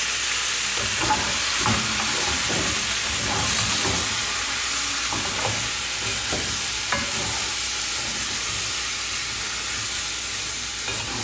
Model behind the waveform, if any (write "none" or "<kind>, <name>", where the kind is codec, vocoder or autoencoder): none